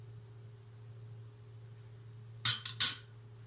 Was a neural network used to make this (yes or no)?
no